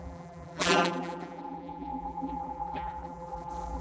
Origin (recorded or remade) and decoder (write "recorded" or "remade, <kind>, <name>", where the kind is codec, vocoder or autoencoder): remade, vocoder, BigVGAN v2